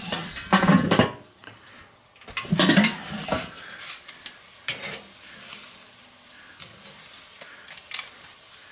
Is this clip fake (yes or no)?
no